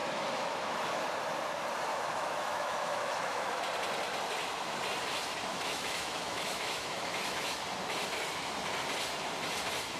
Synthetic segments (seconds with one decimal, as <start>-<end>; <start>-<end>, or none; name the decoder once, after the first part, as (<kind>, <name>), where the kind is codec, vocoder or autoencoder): 0.0-0.8 (autoencoder, DAC-VAE); 1.9-3.6; 5.5-7.6